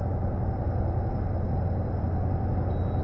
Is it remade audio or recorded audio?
recorded